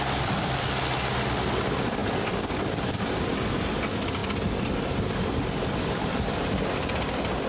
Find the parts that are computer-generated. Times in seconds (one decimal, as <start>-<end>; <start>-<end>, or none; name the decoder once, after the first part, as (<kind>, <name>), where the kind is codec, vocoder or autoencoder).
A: none